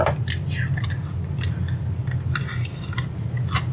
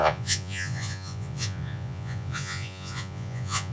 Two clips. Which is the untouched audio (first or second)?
first